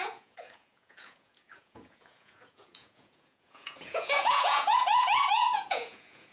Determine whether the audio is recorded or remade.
remade